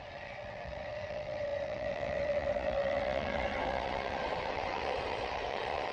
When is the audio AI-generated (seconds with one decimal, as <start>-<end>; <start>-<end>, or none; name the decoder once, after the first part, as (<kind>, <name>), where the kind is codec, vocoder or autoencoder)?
0.0-5.9 (vocoder, WaveNeXt)